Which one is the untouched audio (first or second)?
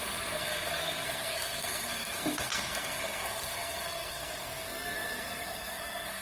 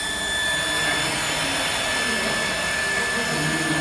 second